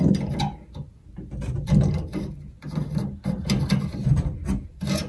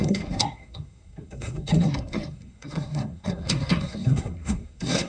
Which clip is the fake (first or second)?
second